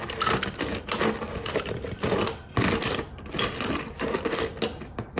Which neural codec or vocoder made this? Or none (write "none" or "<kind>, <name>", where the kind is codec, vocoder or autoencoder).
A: none